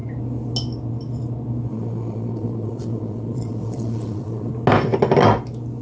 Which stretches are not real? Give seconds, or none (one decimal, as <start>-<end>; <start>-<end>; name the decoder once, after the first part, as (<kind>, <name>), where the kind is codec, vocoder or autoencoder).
1.7-4.5 (vocoder, Vocos)